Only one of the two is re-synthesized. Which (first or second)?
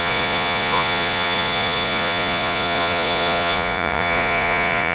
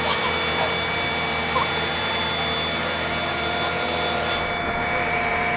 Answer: first